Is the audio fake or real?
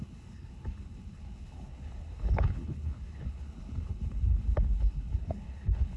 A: fake